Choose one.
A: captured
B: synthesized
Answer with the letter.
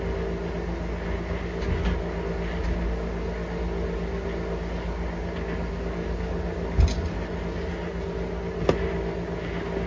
A